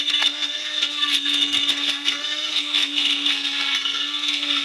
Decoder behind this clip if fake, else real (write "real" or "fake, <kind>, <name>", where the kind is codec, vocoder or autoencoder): fake, codec, SNAC